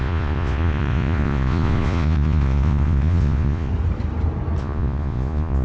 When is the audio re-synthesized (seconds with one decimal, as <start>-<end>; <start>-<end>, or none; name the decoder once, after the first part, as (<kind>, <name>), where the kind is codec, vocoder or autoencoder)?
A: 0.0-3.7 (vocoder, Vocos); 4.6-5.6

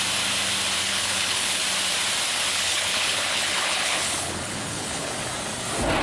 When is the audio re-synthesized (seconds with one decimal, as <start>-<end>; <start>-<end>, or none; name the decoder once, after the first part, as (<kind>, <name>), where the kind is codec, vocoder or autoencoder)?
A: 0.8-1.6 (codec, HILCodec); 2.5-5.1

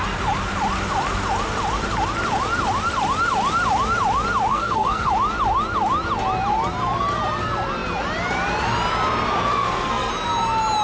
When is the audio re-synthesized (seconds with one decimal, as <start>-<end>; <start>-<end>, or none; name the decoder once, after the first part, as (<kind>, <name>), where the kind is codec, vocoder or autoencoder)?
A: 4.5-5.1 (codec, SNAC); 9.5-10.1

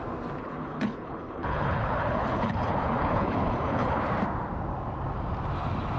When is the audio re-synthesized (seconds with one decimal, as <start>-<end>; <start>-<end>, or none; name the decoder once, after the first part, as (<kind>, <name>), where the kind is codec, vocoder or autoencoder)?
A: 0.4-4.0 (codec, HILCodec)

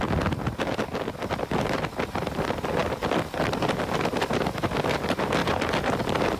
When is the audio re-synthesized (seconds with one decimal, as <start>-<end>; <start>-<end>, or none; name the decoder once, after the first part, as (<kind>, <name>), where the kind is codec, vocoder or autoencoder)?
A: 0.0-6.4 (vocoder, BigVGAN v2)

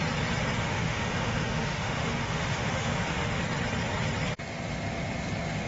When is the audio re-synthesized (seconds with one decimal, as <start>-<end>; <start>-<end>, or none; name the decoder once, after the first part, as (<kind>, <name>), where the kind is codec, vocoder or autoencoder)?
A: 0.6-3.4 (autoencoder, DAC-VAE)

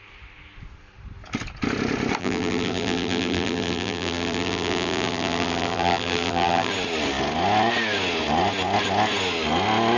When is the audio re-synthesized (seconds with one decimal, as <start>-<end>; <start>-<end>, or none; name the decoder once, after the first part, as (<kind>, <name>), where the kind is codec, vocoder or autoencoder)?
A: 2.2-6.7 (vocoder, BigVGAN v2)